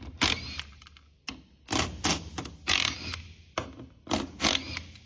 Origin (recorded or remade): recorded